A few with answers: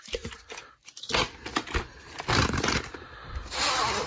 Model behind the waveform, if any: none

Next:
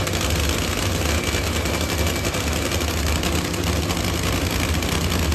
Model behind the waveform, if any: none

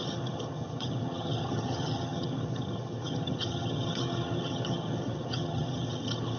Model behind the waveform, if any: vocoder, HiFi-GAN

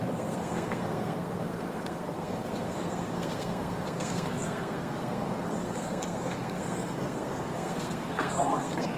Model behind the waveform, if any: codec, SNAC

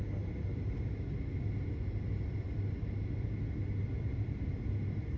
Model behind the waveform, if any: none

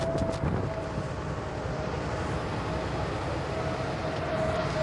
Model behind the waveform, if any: none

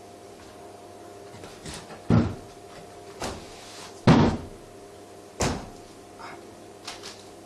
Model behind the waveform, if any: none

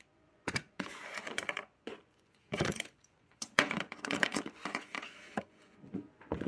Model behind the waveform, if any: vocoder, Vocos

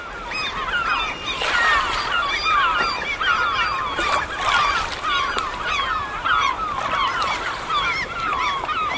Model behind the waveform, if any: vocoder, BigVGAN v2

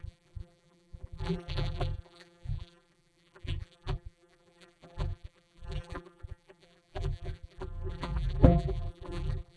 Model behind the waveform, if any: vocoder, BigVGAN v2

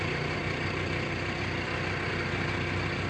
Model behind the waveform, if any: none